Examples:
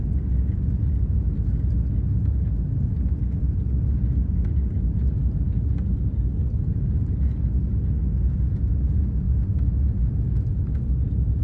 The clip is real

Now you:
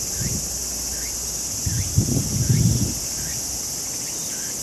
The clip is real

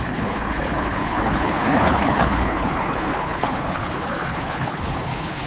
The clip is fake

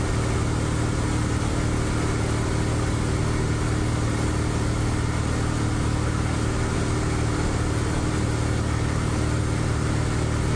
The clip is real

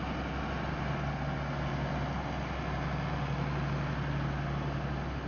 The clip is real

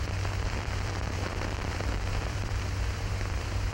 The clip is fake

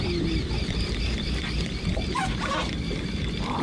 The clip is real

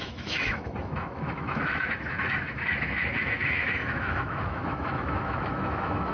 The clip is fake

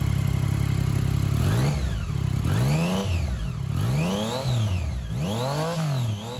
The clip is real